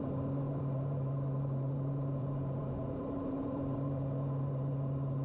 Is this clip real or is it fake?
fake